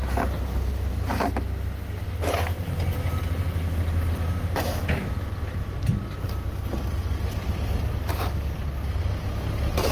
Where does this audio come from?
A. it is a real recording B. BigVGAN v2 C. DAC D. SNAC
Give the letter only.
A